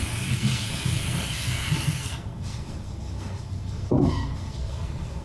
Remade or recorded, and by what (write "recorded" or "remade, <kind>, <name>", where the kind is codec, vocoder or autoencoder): remade, codec, SNAC